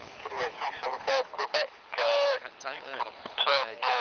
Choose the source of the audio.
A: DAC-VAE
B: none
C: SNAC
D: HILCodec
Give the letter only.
D